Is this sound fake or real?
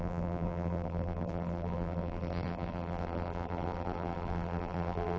fake